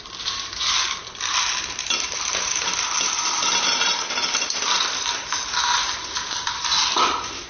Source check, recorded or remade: remade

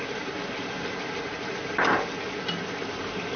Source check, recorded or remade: recorded